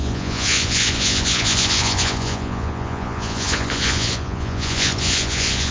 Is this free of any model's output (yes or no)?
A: no